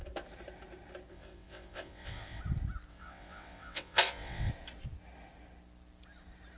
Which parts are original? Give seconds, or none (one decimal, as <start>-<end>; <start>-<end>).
0.0-1.1; 2.4-2.9; 4.5-6.6

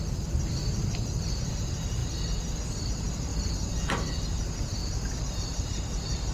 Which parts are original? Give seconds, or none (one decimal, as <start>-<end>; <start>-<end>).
2.0-2.9; 3.3-3.9; 4.8-5.5

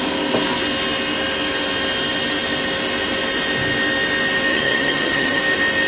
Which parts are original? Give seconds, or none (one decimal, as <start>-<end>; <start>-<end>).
0.0-4.5; 5.4-5.9